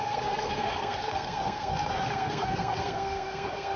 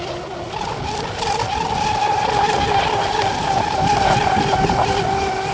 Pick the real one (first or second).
second